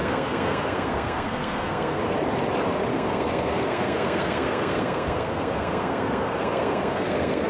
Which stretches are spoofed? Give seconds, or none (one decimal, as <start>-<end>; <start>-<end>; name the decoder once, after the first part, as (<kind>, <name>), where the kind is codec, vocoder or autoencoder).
0.0-2.0 (codec, SNAC); 2.9-7.5